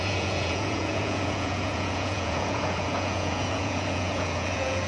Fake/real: fake